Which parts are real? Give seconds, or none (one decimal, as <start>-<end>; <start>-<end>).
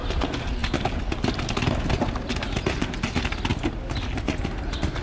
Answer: 0.0-5.0